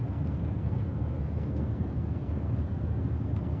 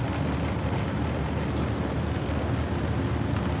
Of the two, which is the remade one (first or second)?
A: first